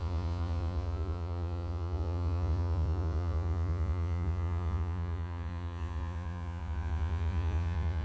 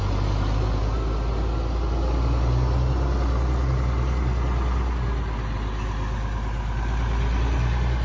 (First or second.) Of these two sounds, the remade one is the first